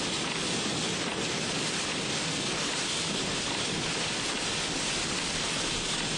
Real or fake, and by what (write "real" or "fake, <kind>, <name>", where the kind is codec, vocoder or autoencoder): real